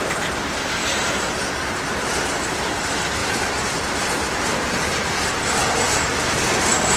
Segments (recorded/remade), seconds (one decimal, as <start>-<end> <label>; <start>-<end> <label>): 0.0-7.0 recorded